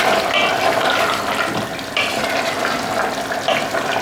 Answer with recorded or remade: recorded